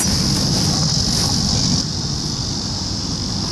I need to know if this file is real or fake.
real